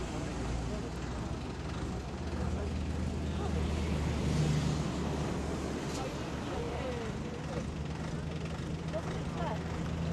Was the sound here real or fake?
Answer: real